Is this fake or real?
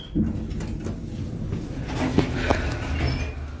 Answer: real